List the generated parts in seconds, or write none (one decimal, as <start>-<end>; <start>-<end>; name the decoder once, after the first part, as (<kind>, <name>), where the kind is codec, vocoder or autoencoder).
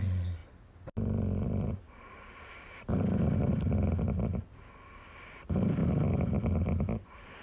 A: none